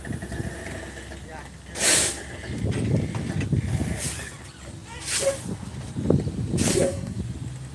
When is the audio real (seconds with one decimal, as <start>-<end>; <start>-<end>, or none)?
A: 0.0-6.7; 7.2-7.7